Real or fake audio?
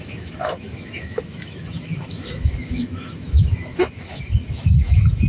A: fake